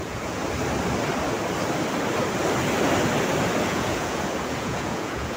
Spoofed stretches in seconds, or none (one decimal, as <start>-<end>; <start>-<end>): 0.0-0.4; 3.6-5.4